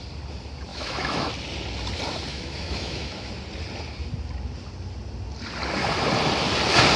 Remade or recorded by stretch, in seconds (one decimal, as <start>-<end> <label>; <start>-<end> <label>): 0.0-0.7 recorded; 0.7-1.3 remade; 1.3-2.3 recorded; 2.3-3.3 remade; 3.3-7.0 recorded